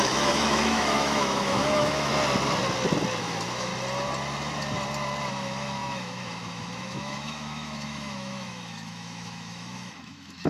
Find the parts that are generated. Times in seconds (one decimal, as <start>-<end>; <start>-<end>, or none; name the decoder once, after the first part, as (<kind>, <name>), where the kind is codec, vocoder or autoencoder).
0.0-2.1 (autoencoder, DAC-VAE); 3.2-3.7; 5.3-10.5